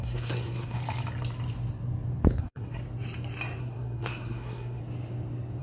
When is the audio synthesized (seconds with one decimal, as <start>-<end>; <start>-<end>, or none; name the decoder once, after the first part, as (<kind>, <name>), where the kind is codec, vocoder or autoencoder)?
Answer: 0.0-0.8 (codec, SNAC); 2.4-2.8; 3.6-4.8